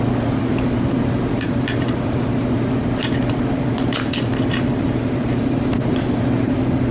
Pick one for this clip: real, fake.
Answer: fake